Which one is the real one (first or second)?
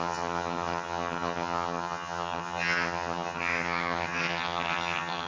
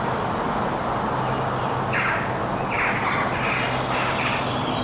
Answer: second